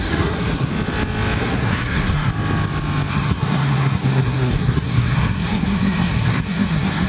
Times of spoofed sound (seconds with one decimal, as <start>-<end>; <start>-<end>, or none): 0.0-0.7; 1.4-2.3; 3.1-7.1